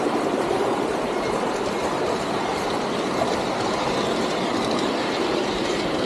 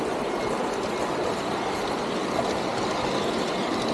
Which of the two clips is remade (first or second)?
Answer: first